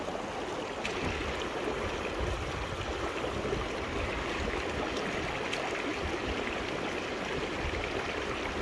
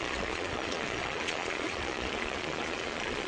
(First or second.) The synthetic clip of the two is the second